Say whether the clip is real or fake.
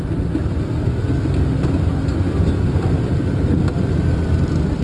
real